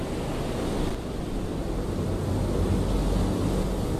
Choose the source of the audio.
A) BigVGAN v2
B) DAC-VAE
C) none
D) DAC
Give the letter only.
C